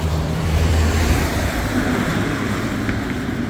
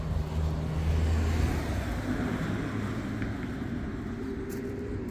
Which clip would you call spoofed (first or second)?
first